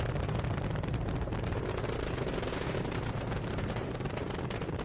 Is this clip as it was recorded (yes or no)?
yes